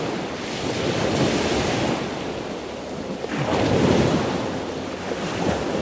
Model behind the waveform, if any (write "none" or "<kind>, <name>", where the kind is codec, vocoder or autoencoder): none